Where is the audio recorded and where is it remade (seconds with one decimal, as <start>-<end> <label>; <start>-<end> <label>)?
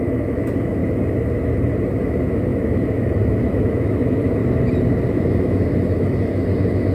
0.0-0.8 remade; 0.8-2.1 recorded; 2.1-4.4 remade; 4.4-5.1 recorded; 5.1-6.9 remade